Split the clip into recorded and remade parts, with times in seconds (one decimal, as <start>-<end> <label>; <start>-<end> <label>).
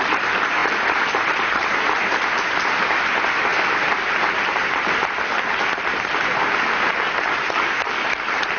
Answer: 0.0-8.6 recorded